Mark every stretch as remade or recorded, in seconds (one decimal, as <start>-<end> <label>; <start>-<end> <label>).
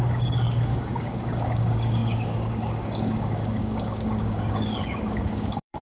0.0-5.8 remade